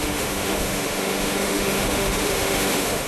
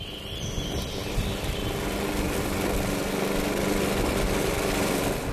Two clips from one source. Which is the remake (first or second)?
first